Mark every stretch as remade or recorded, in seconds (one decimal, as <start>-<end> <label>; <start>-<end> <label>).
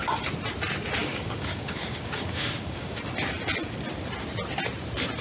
0.0-1.0 recorded; 1.0-3.0 remade; 3.0-5.2 recorded